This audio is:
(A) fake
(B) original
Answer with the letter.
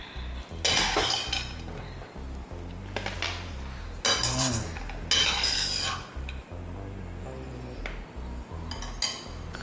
B